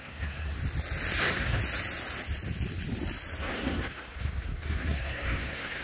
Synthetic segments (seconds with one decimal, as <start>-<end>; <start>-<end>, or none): 0.0-0.6; 1.2-1.6; 3.4-5.8